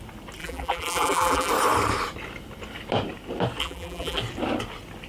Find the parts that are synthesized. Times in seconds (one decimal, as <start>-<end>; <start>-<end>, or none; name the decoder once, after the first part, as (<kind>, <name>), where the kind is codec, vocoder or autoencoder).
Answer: 0.4-1.5 (vocoder, BigVGAN v2); 3.6-4.2